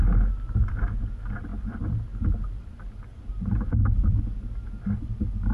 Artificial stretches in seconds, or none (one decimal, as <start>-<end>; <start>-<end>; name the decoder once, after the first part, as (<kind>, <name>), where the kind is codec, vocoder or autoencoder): 1.5-2.2 (vocoder, BigVGAN v2); 3.1-4.2